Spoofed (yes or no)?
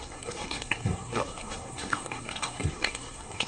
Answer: yes